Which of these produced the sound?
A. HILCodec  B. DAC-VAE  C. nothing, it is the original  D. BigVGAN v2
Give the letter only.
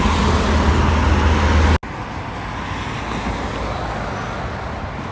C